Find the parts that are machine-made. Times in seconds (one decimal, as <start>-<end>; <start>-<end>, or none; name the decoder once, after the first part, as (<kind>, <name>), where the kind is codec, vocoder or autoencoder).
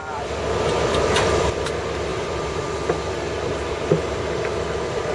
0.0-1.7 (vocoder, BigVGAN v2); 2.1-2.6